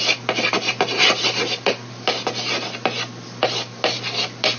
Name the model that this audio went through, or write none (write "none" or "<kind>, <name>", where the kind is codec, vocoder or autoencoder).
none